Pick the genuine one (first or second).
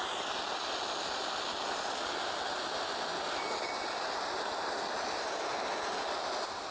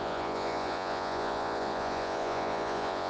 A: first